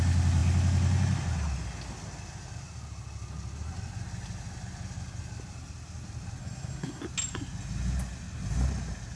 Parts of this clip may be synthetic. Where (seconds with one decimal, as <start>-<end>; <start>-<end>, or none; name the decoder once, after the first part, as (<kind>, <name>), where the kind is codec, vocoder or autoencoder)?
6.4-7.0 (codec, SNAC)